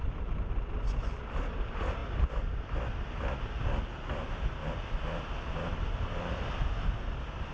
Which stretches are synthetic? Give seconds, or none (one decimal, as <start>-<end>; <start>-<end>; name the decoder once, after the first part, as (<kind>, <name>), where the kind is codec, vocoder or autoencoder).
none